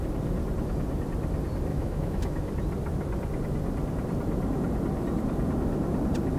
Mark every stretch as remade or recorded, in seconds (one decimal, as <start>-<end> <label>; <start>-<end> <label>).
0.0-1.7 recorded; 1.7-2.5 remade; 2.5-6.4 recorded